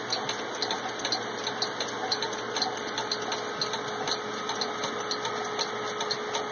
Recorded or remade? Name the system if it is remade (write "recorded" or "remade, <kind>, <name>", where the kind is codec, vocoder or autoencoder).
recorded